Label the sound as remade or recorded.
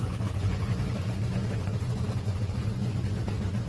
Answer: remade